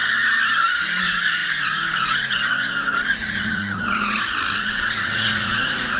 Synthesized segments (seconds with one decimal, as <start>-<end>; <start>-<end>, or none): 1.0-6.0